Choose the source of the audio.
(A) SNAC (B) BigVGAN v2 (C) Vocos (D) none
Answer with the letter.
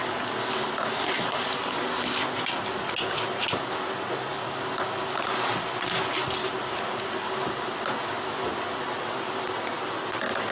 D